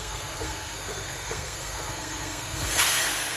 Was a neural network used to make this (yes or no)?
yes